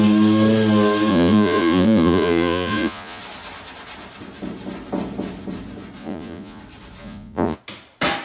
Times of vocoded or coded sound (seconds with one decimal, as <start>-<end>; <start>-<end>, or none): 1.1-3.2; 6.0-6.6; 7.0-7.6